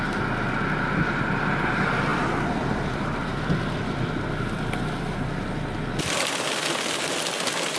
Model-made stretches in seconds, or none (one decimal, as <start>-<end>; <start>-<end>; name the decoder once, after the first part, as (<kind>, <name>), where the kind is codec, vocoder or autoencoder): 2.1-5.2 (vocoder, BigVGAN v2)